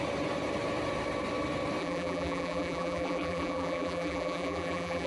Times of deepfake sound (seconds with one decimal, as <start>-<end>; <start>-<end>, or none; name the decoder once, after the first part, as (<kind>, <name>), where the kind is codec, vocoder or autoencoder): 1.8-5.1 (vocoder, BigVGAN v2)